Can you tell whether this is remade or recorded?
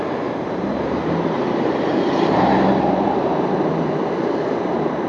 remade